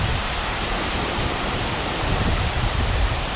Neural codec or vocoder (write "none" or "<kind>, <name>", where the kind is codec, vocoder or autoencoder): vocoder, BigVGAN v2